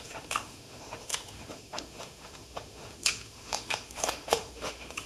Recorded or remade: remade